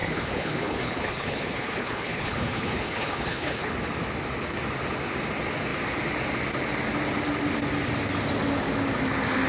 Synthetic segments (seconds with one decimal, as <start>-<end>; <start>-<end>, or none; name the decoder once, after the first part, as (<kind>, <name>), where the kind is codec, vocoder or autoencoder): 0.0-3.7 (codec, HILCodec)